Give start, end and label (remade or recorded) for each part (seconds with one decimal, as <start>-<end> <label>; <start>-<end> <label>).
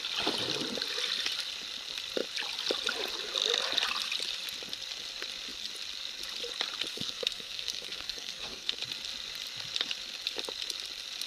0.0-6.9 recorded; 6.9-8.8 remade; 8.8-11.3 recorded